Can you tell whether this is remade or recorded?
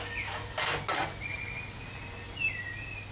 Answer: recorded